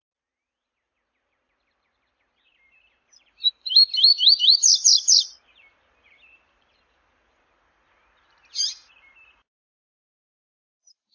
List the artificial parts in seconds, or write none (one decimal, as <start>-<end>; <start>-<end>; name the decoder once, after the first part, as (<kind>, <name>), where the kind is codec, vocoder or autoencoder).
0.0-11.1 (vocoder, BigVGAN v2)